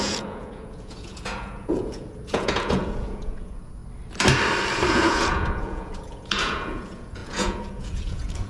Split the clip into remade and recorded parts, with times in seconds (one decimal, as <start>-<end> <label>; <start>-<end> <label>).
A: 0.0-3.8 remade; 3.8-4.9 recorded; 4.9-8.5 remade